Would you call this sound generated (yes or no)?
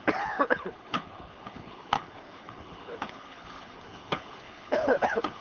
yes